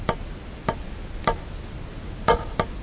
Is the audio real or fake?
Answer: real